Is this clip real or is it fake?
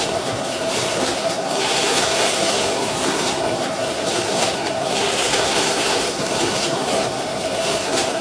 fake